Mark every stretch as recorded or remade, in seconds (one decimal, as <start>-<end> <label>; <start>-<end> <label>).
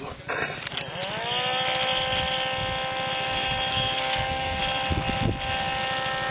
0.0-3.7 recorded; 3.7-4.6 remade; 4.6-6.3 recorded